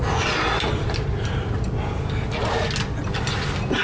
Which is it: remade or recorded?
recorded